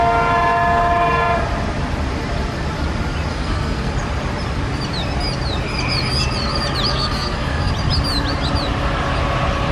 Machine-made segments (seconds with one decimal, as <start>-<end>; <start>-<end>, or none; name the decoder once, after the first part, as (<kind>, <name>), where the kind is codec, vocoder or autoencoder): 3.3-3.9 (codec, SNAC); 6.9-7.7